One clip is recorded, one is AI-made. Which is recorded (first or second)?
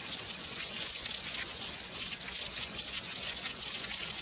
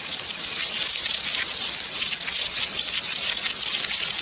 second